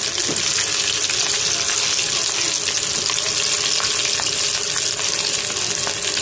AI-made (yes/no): no